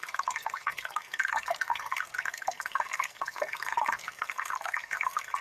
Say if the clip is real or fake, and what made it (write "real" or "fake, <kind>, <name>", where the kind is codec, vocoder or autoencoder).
fake, codec, SNAC